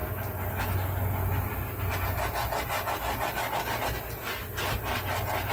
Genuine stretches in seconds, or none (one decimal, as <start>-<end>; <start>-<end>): 0.0-5.5

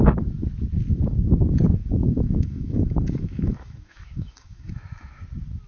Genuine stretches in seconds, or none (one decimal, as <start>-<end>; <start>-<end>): 0.0-1.8; 5.2-5.7